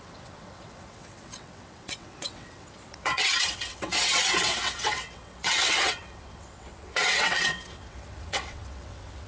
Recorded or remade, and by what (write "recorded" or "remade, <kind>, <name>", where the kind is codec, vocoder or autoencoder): remade, vocoder, WaveNeXt